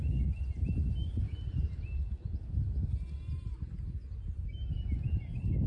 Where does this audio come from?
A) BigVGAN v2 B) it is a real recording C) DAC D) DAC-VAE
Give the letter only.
B